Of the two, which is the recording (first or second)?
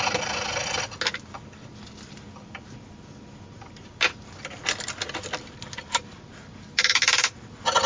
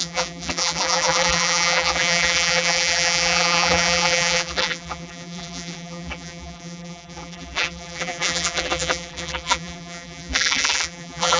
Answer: first